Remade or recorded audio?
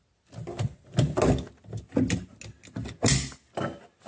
recorded